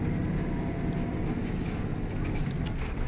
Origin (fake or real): real